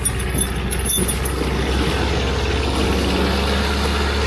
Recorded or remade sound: recorded